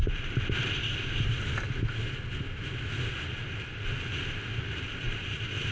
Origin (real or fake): real